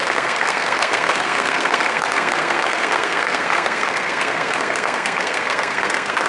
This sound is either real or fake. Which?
fake